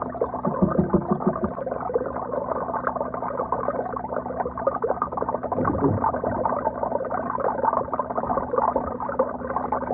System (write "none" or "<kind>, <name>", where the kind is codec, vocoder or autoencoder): none